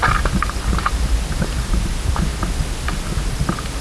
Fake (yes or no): no